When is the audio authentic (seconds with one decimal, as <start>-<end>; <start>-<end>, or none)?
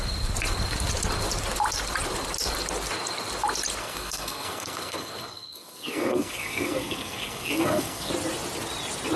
0.0-3.8; 8.1-9.2